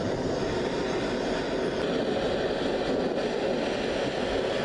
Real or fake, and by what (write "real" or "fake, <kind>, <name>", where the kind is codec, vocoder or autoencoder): real